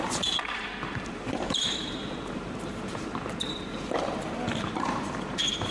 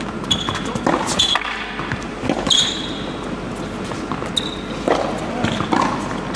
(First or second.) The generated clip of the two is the first